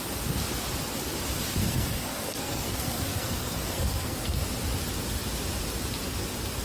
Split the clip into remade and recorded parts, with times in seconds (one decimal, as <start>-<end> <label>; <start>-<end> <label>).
0.0-1.6 recorded; 1.6-4.4 remade; 4.4-6.6 recorded